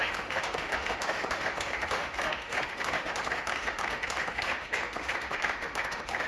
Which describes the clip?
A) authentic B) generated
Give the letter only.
B